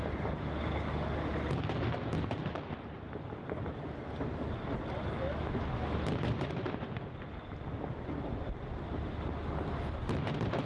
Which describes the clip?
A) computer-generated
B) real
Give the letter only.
B